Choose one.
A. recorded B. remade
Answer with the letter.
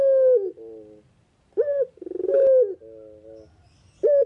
A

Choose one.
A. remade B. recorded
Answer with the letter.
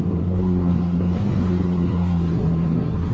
A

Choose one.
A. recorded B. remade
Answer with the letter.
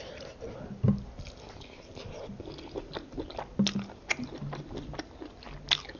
A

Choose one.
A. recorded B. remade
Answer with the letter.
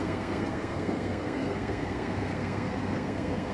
B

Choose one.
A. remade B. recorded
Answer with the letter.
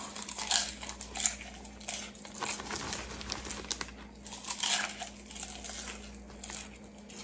B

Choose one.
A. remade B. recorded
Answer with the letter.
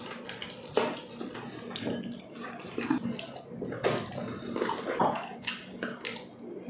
B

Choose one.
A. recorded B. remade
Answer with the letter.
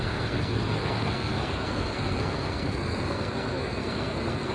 B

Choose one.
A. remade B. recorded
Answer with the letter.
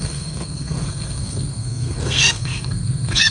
A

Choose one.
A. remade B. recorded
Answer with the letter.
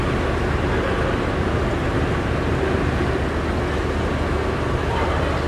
B